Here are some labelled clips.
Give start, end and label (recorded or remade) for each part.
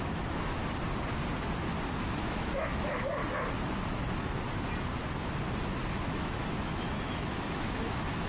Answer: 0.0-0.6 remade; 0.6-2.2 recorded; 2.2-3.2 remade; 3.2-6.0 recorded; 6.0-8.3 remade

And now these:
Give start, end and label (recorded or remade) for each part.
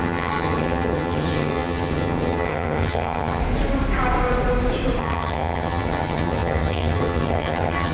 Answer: 0.0-3.4 remade; 3.4-5.0 recorded; 5.0-7.9 remade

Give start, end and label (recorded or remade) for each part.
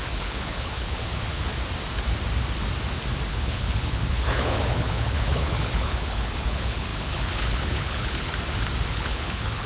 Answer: 0.0-1.5 remade; 1.5-3.3 recorded; 3.3-8.3 remade; 8.3-8.9 recorded; 8.9-9.7 remade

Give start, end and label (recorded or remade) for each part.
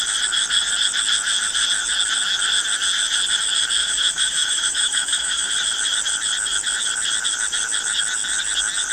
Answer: 0.0-3.8 recorded; 3.8-5.5 remade; 5.5-8.9 recorded